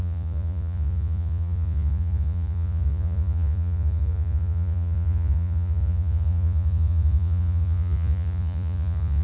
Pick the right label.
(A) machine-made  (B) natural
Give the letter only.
A